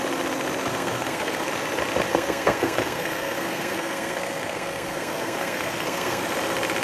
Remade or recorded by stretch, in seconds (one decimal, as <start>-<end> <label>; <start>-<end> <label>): 0.0-0.7 recorded; 0.7-1.5 remade; 1.5-2.1 recorded; 2.1-6.2 remade; 6.2-6.8 recorded